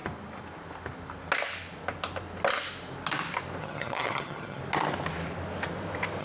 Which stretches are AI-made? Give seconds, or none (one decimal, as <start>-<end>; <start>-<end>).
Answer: 3.6-4.6

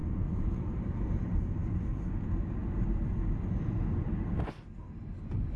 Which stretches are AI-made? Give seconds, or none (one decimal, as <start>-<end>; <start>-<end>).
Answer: 0.0-0.6

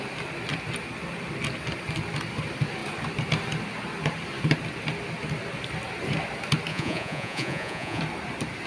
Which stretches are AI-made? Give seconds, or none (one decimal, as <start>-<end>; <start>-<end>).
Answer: 6.7-8.0